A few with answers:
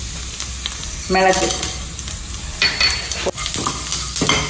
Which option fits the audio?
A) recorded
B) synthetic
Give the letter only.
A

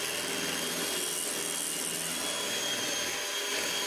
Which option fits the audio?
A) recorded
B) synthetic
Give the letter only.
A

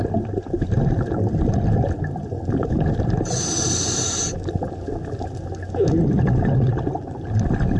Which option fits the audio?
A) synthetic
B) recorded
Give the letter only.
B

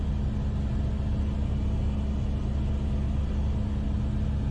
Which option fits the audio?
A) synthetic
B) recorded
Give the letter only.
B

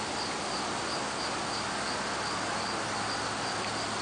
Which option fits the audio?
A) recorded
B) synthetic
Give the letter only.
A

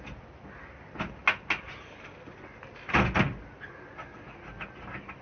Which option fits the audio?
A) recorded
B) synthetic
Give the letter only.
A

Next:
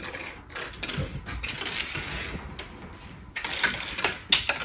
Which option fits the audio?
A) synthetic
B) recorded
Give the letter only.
B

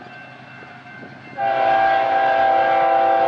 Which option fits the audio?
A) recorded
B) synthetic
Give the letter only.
A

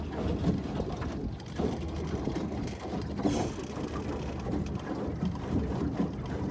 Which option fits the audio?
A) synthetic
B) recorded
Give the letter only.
B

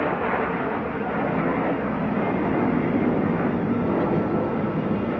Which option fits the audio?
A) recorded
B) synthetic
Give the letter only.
A